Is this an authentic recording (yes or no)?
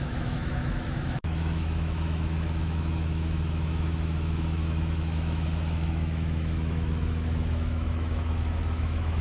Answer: no